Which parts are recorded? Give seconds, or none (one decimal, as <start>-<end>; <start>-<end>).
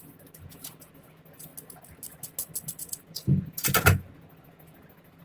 1.5-2.8